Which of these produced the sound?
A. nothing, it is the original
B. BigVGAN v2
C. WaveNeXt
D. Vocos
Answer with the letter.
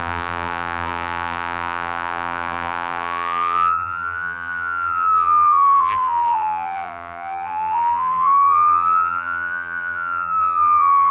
B